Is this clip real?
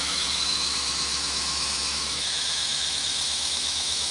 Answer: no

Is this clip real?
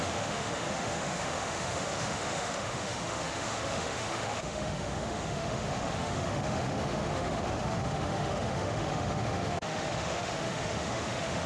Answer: no